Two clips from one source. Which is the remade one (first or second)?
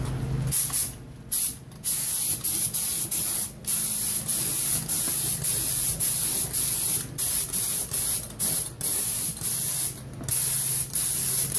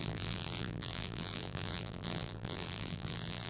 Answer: second